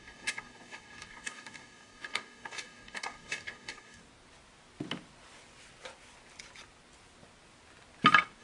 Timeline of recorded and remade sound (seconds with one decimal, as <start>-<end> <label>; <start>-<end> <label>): 0.0-4.0 remade; 4.0-8.4 recorded